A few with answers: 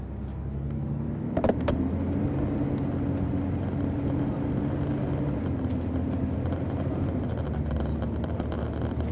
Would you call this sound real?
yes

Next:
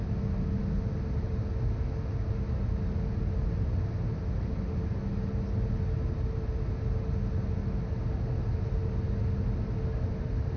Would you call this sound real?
yes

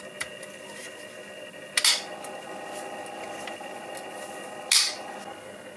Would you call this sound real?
yes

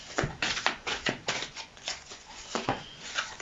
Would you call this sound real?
no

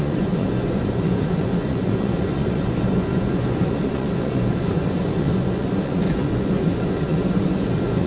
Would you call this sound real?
no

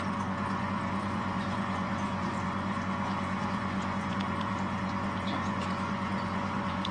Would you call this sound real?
no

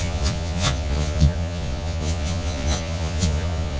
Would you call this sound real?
no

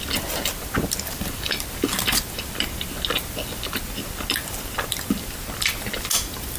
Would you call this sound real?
yes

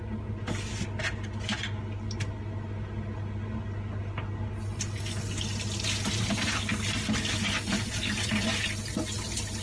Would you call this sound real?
yes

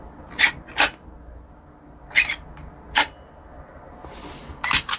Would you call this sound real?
yes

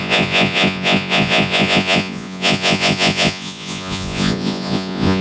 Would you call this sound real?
no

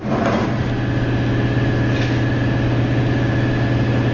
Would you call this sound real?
yes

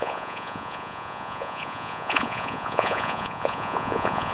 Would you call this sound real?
no